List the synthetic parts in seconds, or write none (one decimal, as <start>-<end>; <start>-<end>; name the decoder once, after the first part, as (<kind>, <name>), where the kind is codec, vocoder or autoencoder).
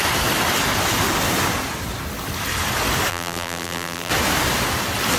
3.1-4.1 (vocoder, BigVGAN v2)